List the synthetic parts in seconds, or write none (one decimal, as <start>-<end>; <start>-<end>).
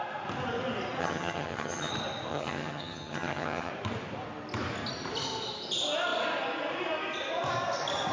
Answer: 1.0-1.9; 2.3-3.7